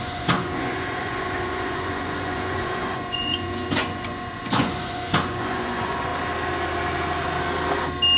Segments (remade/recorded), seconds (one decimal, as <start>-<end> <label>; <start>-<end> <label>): 0.0-6.1 remade; 6.1-8.2 recorded